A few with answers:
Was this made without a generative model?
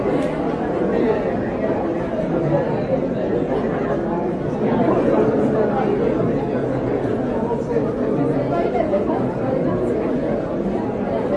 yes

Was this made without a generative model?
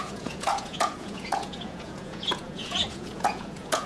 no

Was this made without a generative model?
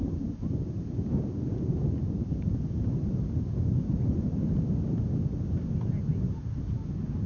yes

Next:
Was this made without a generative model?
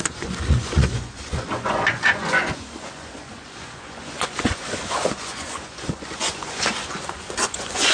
no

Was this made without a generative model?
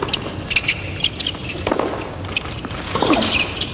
yes